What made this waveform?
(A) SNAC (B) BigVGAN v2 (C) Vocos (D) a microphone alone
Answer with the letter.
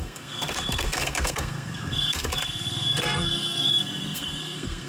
A